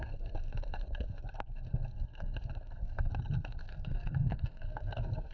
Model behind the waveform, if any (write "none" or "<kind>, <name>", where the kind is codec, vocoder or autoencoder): codec, SNAC